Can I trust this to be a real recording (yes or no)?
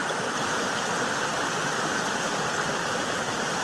yes